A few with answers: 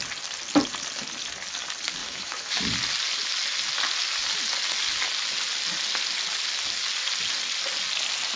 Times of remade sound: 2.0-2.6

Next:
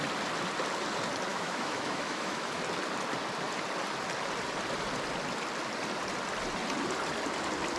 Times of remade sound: 1.3-2.6

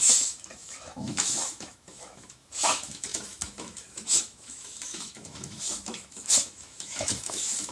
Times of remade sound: 0.0-7.7

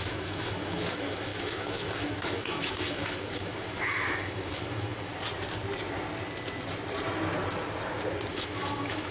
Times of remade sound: 0.0-5.1; 8.3-9.1